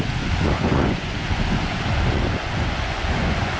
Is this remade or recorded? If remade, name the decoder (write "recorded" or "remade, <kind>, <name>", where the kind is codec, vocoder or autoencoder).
remade, vocoder, Vocos